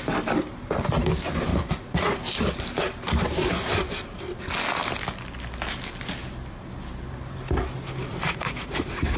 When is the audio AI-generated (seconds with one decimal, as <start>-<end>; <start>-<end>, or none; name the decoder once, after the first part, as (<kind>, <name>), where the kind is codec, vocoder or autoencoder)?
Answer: 1.5-2.2 (vocoder, Vocos); 8.1-9.2